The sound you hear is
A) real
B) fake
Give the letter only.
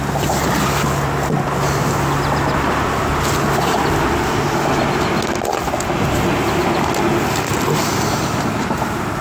A